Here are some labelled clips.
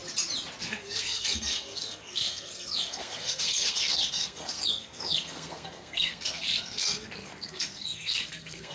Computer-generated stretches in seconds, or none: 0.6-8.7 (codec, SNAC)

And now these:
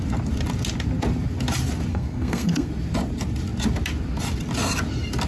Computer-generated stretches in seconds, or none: 1.9-2.7 (codec, SNAC)

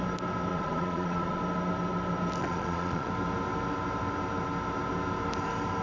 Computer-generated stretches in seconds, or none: 0.5-1.4 (vocoder, Vocos); 2.4-3.1

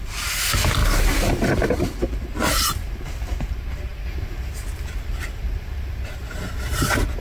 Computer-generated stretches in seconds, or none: none

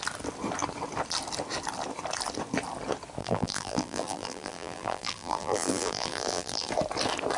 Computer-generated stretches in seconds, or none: 3.2-6.7 (vocoder, BigVGAN v2)